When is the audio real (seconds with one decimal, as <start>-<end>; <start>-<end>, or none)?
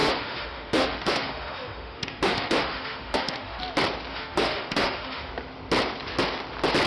3.6-4.1; 5.3-6.9